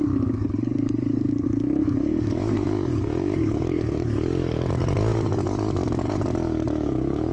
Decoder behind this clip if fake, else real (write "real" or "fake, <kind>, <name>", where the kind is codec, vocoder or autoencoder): fake, codec, DAC